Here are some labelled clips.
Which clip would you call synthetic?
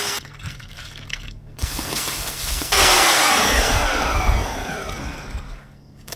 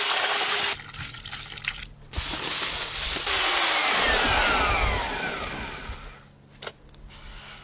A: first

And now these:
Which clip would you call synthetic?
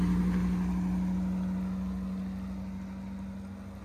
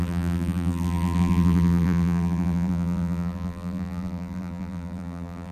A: second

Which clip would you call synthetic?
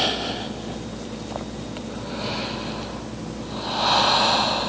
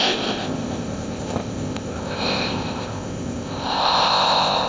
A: second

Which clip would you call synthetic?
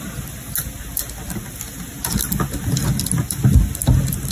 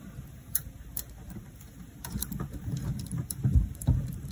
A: second